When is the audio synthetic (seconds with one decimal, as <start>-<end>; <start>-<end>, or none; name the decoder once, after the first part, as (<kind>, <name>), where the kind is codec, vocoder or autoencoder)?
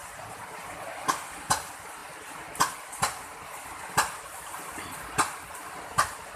0.0-0.8 (vocoder, BigVGAN v2)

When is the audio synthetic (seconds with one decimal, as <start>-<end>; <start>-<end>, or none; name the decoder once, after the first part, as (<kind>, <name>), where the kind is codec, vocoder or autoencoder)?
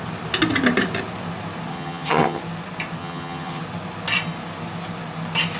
1.7-2.4 (vocoder, HiFi-GAN); 3.0-3.6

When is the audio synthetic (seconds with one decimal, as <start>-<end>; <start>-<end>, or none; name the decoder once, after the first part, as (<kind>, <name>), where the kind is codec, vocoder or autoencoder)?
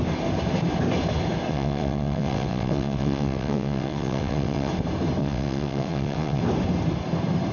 1.5-4.7 (vocoder, WaveNeXt); 5.2-6.4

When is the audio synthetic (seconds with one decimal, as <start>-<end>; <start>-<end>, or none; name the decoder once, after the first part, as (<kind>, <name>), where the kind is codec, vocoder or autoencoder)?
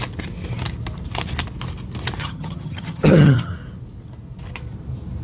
2.2-3.5 (vocoder, HiFi-GAN)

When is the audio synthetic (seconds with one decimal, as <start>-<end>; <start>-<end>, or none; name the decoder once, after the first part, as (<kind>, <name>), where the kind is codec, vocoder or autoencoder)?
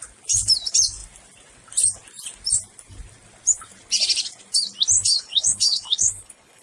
5.1-6.6 (codec, HILCodec)